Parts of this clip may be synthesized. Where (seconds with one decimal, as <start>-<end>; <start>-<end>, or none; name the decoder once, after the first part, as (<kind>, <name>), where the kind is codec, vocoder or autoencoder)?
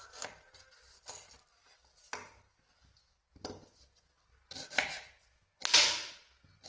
none